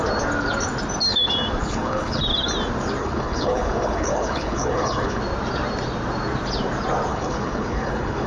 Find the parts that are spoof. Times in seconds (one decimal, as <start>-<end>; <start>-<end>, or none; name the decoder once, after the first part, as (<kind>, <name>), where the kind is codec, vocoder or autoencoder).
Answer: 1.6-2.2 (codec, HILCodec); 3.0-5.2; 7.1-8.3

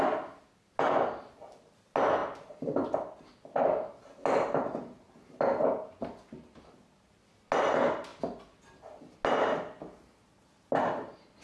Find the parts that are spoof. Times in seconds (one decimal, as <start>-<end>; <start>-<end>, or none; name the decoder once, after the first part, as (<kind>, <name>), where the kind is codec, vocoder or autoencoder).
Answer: none

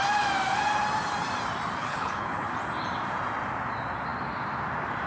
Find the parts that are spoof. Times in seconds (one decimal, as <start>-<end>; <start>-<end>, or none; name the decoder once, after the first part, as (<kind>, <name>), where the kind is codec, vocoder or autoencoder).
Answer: 1.8-2.5 (codec, HILCodec)

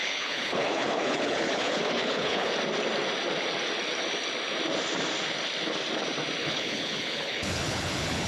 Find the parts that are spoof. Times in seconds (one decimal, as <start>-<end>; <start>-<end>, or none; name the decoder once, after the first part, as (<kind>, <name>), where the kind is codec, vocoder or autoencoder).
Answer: 0.0-2.5 (codec, HILCodec); 6.4-8.3

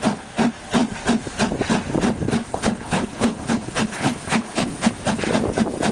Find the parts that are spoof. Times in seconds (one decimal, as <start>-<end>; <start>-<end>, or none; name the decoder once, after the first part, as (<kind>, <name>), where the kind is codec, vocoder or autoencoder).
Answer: 2.5-4.9 (codec, HILCodec)

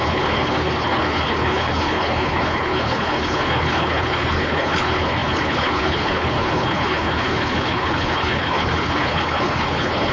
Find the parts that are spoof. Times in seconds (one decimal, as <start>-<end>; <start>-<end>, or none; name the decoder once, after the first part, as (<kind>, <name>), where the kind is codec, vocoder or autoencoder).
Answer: 0.0-10.1 (codec, HILCodec)

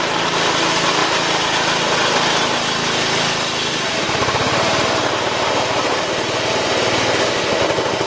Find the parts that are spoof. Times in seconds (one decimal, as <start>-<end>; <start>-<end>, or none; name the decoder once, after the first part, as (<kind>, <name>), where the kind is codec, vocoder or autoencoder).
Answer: none

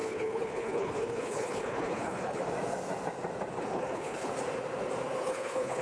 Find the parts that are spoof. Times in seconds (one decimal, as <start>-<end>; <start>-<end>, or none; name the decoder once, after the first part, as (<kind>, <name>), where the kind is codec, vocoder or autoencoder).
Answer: 0.0-2.4 (codec, HILCodec); 3.6-4.3; 5.2-5.8